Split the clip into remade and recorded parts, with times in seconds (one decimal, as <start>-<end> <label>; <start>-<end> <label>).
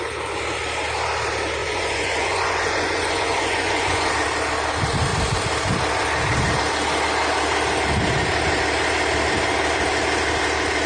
0.0-1.6 recorded; 1.6-4.1 remade; 4.1-10.9 recorded